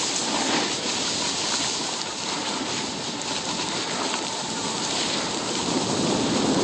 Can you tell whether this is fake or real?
real